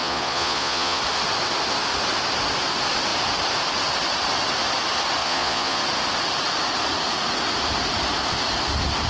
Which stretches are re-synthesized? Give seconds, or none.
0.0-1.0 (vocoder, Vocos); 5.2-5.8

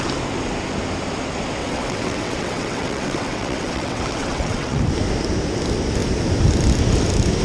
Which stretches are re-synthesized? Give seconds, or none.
1.6-4.8 (vocoder, WaveNeXt)

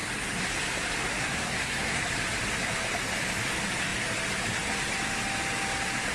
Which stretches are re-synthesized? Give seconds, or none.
1.2-2.0 (codec, SNAC)

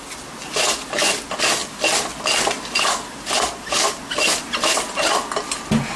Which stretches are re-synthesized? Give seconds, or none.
none

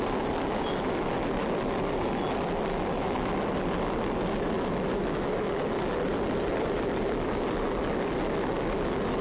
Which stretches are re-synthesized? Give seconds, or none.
2.7-3.3 (autoencoder, DAC-VAE); 4.9-5.5

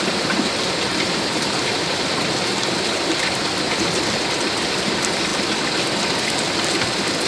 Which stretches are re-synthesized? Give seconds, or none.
none

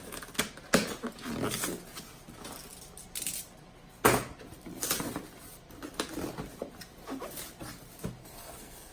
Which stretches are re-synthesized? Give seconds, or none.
8.2-8.9 (codec, SNAC)

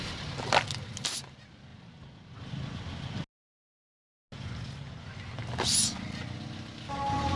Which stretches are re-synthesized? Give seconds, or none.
none